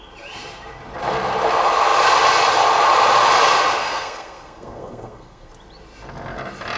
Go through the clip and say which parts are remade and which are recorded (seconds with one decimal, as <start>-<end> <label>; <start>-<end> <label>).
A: 0.0-3.8 recorded; 3.8-5.5 remade; 5.5-6.8 recorded